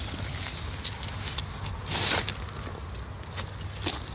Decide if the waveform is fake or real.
real